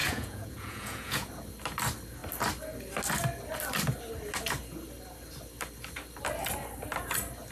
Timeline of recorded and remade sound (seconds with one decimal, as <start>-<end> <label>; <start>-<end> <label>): 0.0-1.3 remade; 1.3-7.5 recorded